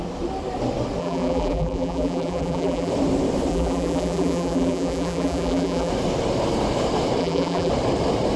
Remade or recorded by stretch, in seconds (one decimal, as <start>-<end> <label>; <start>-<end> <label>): 0.0-1.0 recorded; 1.0-2.9 remade; 2.9-3.5 recorded; 3.5-5.9 remade; 5.9-7.2 recorded; 7.2-7.7 remade; 7.7-8.4 recorded